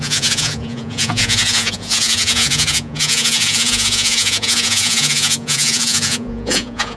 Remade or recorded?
remade